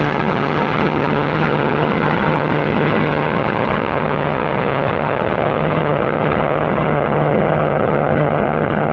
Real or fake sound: fake